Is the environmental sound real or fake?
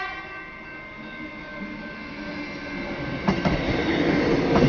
real